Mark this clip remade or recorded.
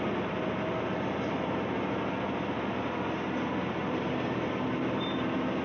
recorded